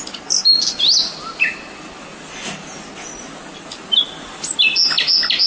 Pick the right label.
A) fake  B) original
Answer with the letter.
B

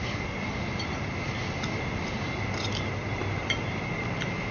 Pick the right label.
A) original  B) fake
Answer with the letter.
A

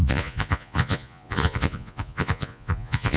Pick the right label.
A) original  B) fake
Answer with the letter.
B